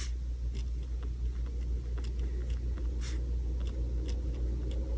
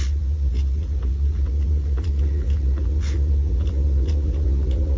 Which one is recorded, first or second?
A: first